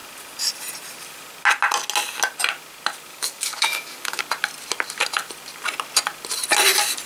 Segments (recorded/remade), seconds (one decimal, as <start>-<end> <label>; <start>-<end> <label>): 0.0-3.1 recorded; 3.1-4.2 remade; 4.2-7.1 recorded